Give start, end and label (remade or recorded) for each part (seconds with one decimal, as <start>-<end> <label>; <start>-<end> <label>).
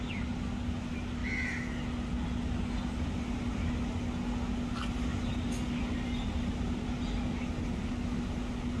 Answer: 0.0-8.8 recorded